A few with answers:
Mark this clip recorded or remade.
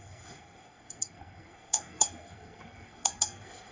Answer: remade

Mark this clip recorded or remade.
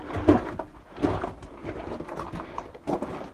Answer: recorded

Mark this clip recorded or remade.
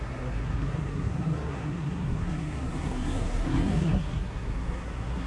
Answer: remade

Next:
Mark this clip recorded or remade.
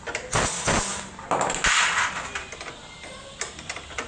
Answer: recorded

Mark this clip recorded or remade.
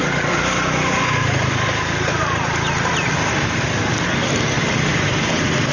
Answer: recorded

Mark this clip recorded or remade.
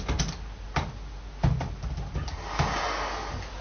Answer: recorded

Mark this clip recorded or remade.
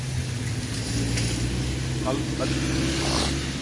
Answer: recorded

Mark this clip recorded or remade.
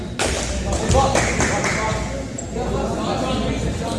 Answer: recorded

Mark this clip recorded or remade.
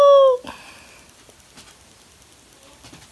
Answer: recorded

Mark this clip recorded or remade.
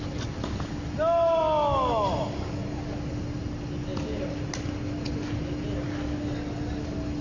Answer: recorded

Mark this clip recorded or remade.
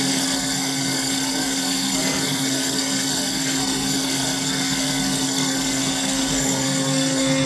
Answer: remade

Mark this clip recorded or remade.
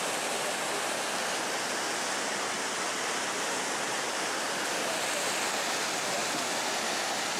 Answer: recorded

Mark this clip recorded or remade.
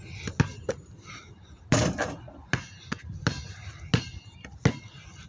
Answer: recorded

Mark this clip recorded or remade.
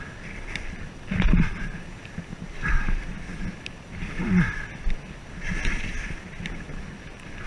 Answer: recorded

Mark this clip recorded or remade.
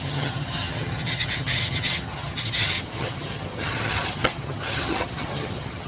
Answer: remade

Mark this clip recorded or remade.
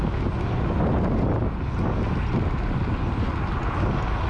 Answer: recorded